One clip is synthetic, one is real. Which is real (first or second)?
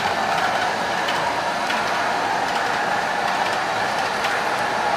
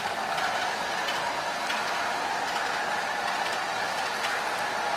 second